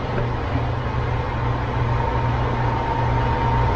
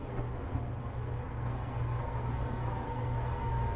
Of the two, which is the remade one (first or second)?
second